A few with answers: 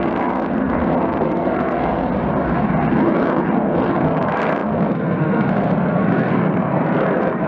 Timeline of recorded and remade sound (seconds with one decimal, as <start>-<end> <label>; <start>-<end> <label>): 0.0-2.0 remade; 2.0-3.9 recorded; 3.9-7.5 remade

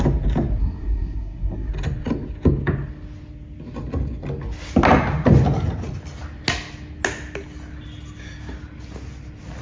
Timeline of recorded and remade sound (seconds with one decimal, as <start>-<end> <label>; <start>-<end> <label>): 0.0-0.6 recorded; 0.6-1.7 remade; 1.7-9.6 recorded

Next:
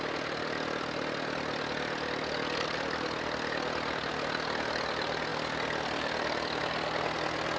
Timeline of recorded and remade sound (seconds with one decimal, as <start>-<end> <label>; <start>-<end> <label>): 0.0-7.6 recorded

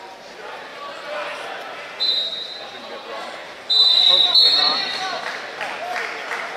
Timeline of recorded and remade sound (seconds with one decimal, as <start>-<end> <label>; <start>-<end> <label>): 0.0-0.7 recorded; 0.7-4.0 remade; 4.0-4.4 recorded; 4.4-5.2 remade; 5.2-6.6 recorded